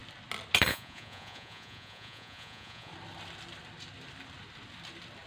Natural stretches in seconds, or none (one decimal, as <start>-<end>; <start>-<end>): 0.0-0.7; 2.9-5.3